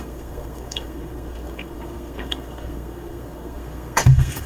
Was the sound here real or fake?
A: fake